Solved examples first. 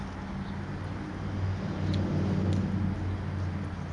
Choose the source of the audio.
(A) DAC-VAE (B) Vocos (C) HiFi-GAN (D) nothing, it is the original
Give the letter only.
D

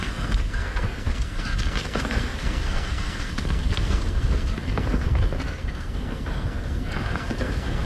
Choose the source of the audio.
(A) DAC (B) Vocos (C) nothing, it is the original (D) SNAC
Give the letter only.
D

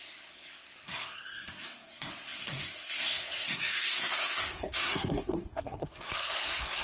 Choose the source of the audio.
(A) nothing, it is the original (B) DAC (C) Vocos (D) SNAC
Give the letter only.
D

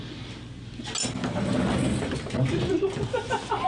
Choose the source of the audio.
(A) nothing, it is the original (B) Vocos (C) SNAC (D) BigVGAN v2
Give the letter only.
A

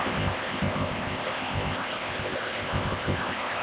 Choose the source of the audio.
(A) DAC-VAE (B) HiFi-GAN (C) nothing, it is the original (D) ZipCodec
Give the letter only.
D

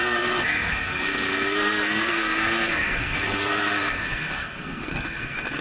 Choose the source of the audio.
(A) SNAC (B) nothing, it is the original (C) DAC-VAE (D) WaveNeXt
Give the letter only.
A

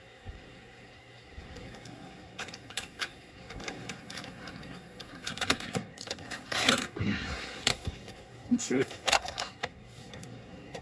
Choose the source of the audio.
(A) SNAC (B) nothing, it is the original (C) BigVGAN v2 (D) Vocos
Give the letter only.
A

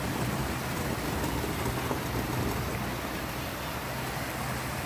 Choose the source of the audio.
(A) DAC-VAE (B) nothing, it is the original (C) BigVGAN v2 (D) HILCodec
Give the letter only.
B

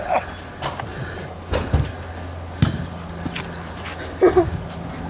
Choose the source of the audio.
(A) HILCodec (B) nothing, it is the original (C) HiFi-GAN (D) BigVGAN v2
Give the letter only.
B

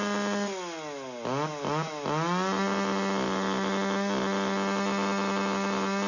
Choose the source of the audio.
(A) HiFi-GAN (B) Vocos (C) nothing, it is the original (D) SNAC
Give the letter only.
C